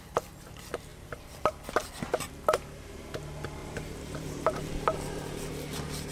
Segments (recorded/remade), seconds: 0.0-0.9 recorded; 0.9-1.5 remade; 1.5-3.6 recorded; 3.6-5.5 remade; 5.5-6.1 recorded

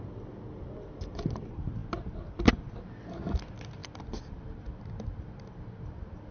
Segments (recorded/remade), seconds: 0.0-6.3 recorded